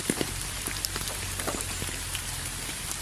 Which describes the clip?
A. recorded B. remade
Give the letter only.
B